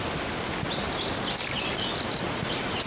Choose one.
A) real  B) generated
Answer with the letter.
A